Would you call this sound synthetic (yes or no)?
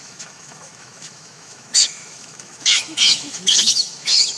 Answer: yes